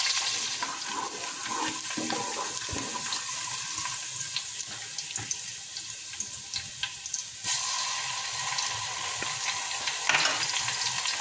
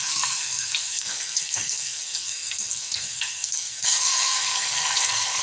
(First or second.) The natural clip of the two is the first